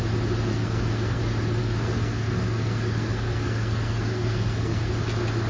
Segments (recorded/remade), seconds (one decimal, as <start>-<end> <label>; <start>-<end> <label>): 0.0-0.5 recorded; 0.5-1.2 remade; 1.2-1.6 recorded; 1.6-4.9 remade; 4.9-5.5 recorded